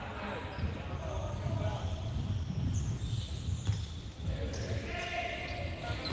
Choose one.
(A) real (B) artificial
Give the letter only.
A